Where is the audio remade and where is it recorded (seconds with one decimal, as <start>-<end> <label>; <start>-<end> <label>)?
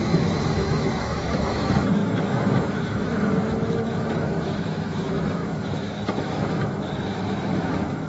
0.0-8.1 remade